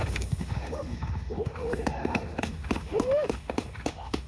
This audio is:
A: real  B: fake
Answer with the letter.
B